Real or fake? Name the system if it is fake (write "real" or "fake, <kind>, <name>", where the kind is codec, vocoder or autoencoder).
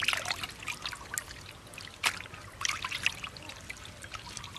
real